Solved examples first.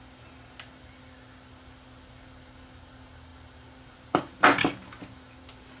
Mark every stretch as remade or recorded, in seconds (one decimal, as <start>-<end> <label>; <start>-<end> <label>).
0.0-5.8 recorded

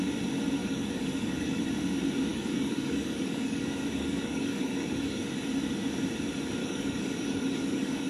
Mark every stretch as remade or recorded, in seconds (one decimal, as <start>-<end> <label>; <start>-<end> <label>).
0.0-0.6 recorded; 0.6-1.6 remade; 1.6-2.3 recorded; 2.3-5.3 remade; 5.3-6.6 recorded; 6.6-8.1 remade

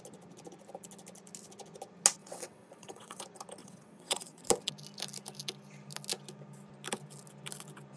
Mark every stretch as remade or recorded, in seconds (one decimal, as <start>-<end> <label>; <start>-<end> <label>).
0.0-2.2 recorded; 2.2-3.2 remade; 3.2-3.6 recorded; 3.6-4.4 remade; 4.4-8.0 recorded

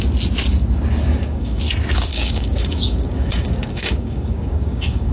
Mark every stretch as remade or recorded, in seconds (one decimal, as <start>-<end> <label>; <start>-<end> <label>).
0.0-1.0 recorded; 1.0-1.6 remade; 1.6-2.1 recorded; 2.1-5.1 remade

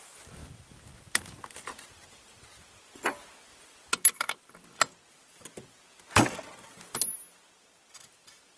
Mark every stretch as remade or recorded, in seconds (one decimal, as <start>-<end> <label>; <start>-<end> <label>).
0.0-8.6 recorded

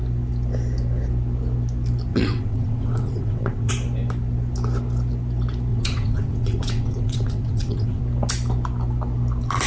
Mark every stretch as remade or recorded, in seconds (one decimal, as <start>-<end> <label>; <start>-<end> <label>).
0.0-2.1 recorded; 2.1-3.7 remade; 3.7-5.7 recorded; 5.7-8.0 remade; 8.0-9.7 recorded